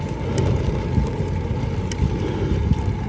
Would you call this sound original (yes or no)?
yes